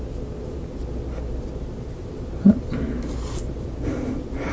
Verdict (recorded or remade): recorded